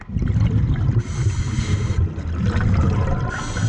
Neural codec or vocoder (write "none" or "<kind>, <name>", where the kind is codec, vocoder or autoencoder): none